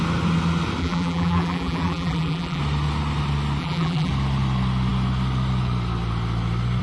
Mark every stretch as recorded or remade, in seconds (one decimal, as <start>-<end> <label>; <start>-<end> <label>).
0.0-0.8 recorded; 0.8-2.6 remade; 2.6-3.6 recorded; 3.6-4.1 remade; 4.1-6.8 recorded